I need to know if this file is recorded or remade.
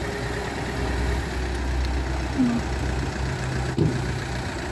recorded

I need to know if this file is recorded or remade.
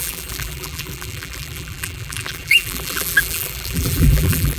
remade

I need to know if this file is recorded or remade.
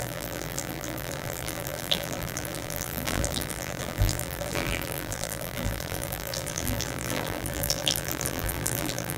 remade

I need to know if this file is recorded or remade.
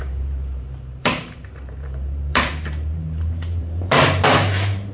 remade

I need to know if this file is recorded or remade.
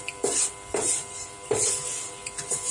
recorded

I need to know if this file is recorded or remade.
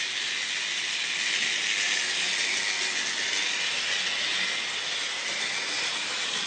recorded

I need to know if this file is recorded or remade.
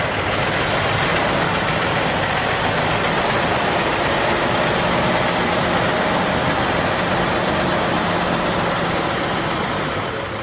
recorded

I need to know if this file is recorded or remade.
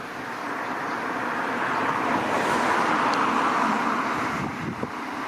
remade